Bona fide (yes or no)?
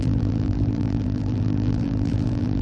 no